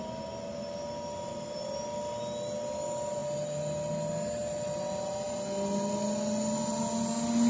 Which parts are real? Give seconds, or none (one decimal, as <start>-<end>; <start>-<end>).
0.0-7.5